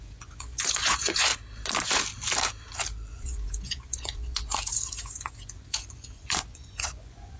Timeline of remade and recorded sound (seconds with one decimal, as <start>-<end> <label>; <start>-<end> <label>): 0.0-1.3 remade; 1.3-3.1 recorded; 3.1-7.4 remade